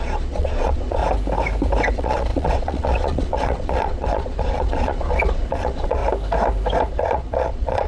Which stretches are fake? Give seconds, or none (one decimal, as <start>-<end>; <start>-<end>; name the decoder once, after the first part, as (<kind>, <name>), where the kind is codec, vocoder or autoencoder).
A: 0.0-1.0 (vocoder, Vocos); 1.9-6.0; 6.9-7.9